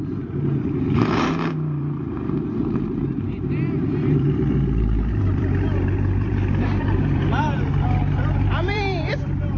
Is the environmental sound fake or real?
fake